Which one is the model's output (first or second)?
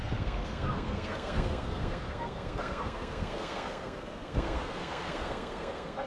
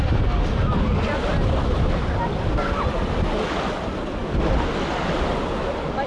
first